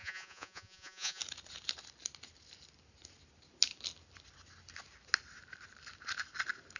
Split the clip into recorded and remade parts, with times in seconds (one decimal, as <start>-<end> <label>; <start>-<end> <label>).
0.0-1.2 remade; 1.2-6.8 recorded

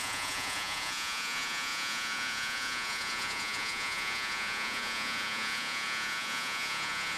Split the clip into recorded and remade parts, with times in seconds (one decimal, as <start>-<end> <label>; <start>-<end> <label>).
0.0-7.2 remade